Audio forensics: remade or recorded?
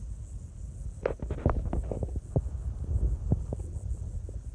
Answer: recorded